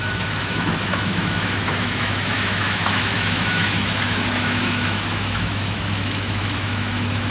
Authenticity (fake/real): fake